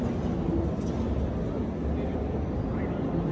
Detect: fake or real real